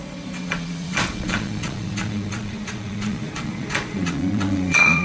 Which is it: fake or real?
fake